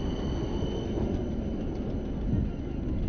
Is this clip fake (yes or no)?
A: no